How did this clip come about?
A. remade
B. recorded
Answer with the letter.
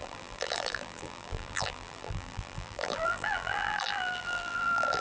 A